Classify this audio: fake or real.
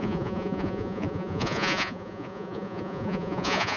fake